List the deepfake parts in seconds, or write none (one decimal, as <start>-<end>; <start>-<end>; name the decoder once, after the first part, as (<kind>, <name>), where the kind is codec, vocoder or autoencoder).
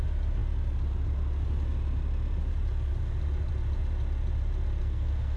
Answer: 4.8-5.4 (codec, SNAC)